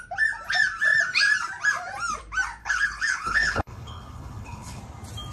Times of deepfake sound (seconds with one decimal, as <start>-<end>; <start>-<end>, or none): 2.6-4.8